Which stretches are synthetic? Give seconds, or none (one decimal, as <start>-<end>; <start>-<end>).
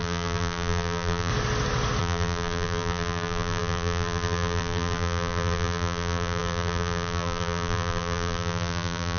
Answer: 0.0-1.3; 2.0-9.2